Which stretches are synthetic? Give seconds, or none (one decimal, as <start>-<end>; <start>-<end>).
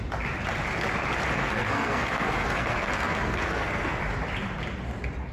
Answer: 1.4-4.0